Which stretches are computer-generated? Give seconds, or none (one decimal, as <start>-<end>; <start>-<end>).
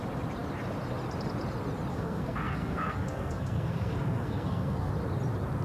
1.9-4.9